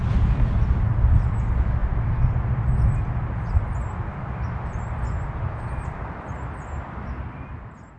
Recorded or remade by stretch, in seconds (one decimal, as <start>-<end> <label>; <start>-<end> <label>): 0.0-8.0 recorded